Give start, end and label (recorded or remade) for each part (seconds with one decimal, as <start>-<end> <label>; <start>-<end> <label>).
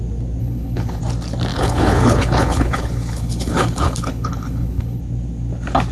0.0-0.4 recorded; 0.4-1.0 remade; 1.0-1.5 recorded; 1.5-5.0 remade; 5.0-5.9 recorded